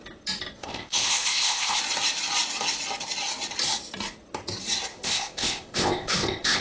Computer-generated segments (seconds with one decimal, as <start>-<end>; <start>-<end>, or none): 0.6-1.8; 4.9-6.6